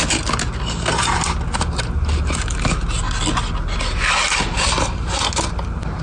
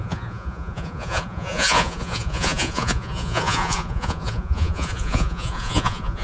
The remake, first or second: second